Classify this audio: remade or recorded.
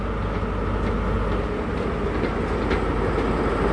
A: recorded